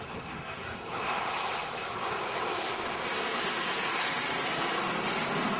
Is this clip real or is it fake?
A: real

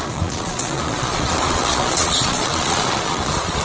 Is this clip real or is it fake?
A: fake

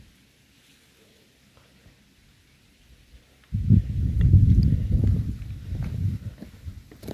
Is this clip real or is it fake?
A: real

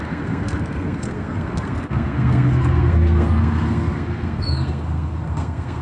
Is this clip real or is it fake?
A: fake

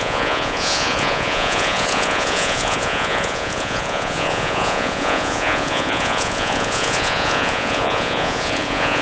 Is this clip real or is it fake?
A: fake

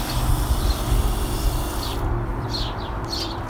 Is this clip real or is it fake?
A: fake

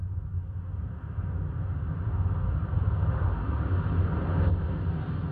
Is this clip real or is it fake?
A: real